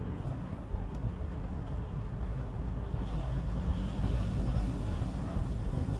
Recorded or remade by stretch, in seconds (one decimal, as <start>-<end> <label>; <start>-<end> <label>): 0.0-6.0 remade